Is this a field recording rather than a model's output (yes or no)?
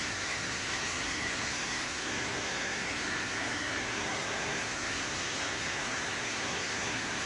no